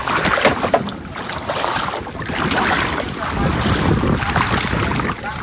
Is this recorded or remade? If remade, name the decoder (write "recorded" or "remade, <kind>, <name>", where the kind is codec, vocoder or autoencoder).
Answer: recorded